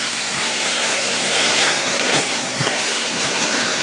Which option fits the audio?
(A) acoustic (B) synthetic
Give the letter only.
B